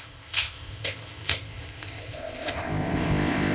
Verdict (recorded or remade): remade